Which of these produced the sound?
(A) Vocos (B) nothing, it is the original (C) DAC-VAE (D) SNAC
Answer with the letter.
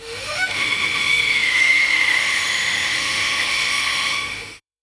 C